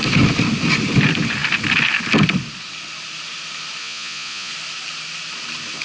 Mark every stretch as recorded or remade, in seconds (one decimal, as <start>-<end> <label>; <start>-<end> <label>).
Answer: 0.0-3.8 recorded; 3.8-4.5 remade; 4.5-5.8 recorded